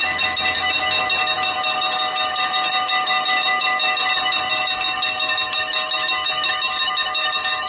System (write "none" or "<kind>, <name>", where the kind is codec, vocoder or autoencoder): autoencoder, DAC-VAE